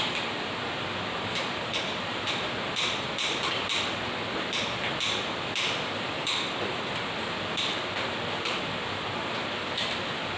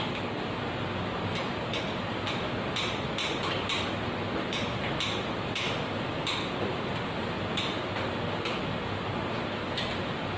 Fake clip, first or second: first